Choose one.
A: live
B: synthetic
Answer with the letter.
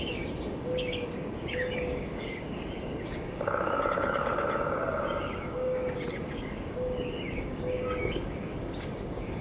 B